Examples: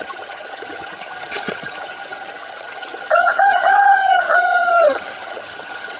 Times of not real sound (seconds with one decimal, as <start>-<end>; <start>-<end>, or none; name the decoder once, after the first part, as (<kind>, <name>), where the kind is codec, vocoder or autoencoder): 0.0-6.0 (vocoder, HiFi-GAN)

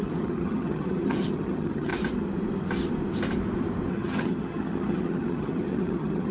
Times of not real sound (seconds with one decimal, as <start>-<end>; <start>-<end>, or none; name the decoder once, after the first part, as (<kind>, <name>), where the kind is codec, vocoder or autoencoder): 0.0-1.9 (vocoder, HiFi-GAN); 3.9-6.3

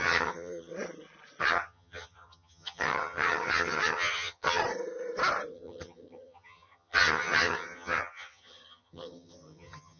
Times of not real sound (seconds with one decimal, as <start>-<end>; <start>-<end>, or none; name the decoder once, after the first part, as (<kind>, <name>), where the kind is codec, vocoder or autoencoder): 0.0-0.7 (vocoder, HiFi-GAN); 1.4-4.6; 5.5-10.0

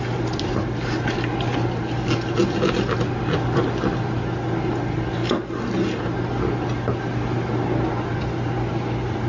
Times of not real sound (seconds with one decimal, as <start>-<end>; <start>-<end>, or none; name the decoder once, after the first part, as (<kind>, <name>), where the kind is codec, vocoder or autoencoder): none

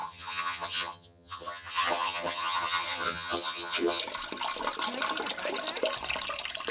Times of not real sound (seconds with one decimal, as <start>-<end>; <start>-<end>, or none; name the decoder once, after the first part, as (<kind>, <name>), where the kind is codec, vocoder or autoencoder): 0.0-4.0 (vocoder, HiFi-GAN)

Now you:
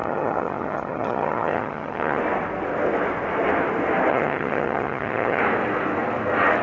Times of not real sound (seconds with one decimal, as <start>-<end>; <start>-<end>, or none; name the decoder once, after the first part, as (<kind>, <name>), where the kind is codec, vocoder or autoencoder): 0.0-2.2 (vocoder, HiFi-GAN); 4.1-5.4

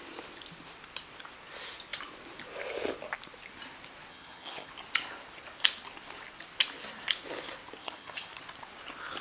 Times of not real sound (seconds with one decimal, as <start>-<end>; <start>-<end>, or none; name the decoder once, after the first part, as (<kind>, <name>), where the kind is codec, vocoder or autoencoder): 4.1-4.7 (vocoder, HiFi-GAN); 7.8-8.3

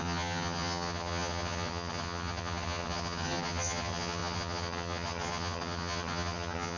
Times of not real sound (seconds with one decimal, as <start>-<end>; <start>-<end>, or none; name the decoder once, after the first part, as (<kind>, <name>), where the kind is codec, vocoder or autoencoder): 0.0-6.8 (vocoder, HiFi-GAN)